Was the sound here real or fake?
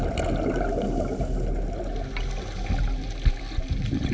real